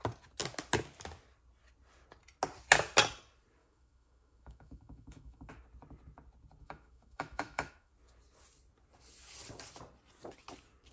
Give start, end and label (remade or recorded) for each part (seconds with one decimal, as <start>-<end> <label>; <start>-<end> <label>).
0.0-3.6 recorded; 3.6-5.5 remade; 5.5-6.6 recorded; 6.6-7.9 remade; 7.9-10.9 recorded